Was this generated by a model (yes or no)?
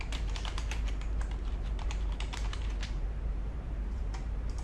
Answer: yes